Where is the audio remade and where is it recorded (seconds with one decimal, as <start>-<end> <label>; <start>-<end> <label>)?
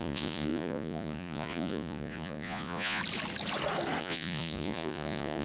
0.0-3.0 remade; 3.0-4.0 recorded; 4.0-5.4 remade